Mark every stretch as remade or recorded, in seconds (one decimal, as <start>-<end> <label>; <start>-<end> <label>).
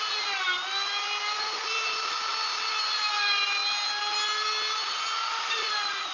0.0-3.6 remade; 3.6-5.3 recorded; 5.3-6.1 remade